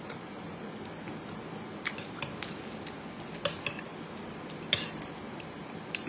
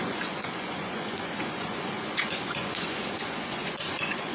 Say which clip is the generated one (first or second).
second